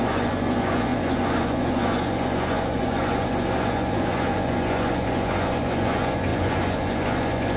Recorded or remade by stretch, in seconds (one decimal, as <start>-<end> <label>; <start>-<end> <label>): 0.0-7.6 remade